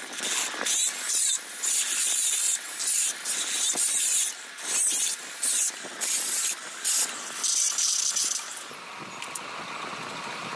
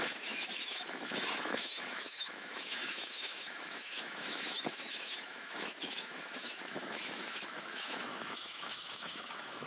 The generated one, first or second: second